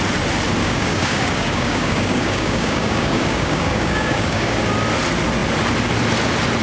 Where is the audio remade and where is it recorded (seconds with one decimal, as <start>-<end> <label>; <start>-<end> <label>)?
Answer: 0.0-0.6 recorded; 0.6-4.6 remade; 4.6-6.6 recorded